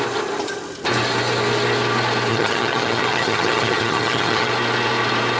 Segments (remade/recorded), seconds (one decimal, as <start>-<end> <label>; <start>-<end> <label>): 0.0-2.3 recorded; 2.3-4.5 remade; 4.5-5.4 recorded